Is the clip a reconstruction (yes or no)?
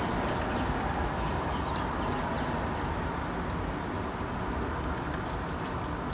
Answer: no